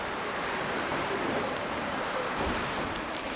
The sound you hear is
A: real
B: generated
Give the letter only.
B